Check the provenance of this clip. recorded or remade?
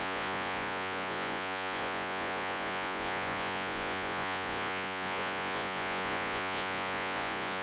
remade